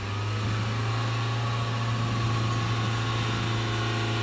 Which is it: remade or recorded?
recorded